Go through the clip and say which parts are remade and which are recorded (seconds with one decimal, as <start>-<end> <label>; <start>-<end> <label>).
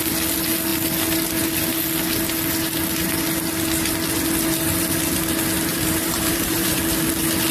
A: 0.0-5.7 recorded; 5.7-6.8 remade; 6.8-7.5 recorded